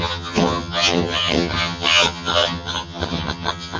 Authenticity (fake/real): fake